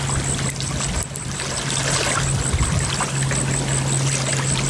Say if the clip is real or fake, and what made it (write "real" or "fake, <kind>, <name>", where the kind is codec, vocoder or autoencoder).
real